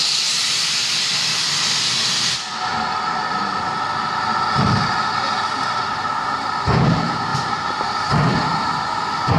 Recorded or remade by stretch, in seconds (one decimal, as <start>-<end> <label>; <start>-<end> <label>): 0.0-7.3 recorded; 7.3-8.8 remade; 8.8-9.4 recorded